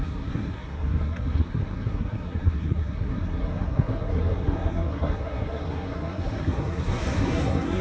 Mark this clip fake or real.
fake